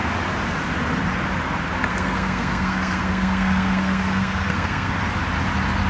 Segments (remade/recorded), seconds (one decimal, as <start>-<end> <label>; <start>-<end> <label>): 0.0-1.9 recorded; 1.9-4.9 remade; 4.9-5.9 recorded